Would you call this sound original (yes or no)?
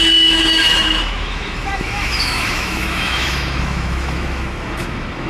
no